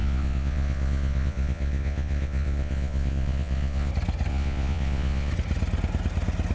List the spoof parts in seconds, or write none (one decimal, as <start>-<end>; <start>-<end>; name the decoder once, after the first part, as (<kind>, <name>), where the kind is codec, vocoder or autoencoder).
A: 0.0-3.9 (vocoder, Vocos); 4.3-5.3